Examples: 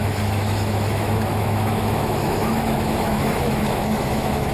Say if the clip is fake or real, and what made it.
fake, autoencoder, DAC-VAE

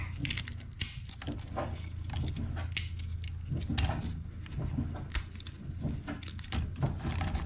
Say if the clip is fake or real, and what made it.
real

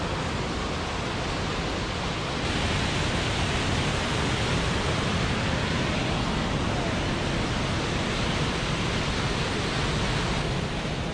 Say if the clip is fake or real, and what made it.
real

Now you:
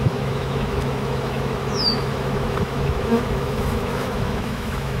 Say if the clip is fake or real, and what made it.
fake, autoencoder, DAC-VAE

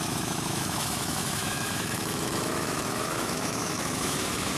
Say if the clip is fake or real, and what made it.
fake, autoencoder, DAC-VAE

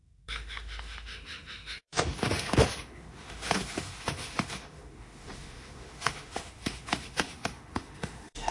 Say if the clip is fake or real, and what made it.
fake, autoencoder, DAC-VAE